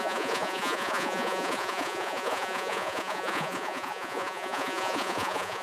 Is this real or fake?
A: fake